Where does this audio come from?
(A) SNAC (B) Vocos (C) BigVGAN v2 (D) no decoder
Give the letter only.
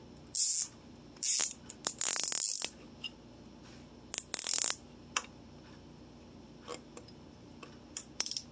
D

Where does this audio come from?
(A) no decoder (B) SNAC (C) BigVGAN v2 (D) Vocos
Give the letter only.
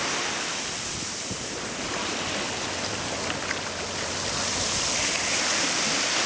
A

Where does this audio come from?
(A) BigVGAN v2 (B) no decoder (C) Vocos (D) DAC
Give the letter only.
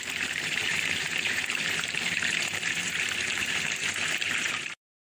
A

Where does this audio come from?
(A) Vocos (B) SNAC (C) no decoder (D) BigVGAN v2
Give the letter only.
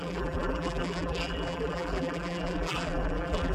D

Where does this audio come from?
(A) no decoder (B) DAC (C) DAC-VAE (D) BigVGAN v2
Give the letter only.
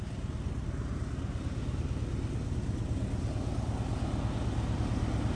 A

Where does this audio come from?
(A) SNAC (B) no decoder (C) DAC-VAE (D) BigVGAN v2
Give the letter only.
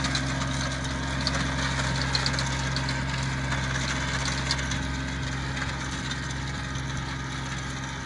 B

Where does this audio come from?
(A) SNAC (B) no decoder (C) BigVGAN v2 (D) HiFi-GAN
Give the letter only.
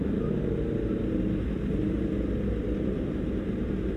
B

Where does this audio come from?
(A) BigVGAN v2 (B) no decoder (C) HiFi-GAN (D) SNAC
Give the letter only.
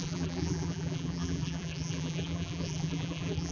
A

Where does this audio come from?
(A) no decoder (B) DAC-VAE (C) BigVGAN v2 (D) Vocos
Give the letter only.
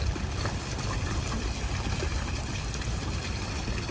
C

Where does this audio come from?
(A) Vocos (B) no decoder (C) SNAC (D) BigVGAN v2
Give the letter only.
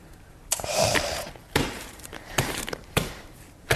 D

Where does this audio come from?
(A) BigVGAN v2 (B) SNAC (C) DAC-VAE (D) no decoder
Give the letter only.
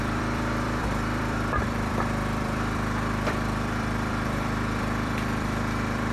A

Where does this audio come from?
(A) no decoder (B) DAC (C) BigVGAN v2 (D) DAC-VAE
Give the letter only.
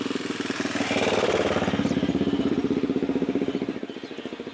C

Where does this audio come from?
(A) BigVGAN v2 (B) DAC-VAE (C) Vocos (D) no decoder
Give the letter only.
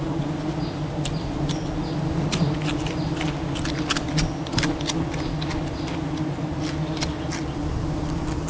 D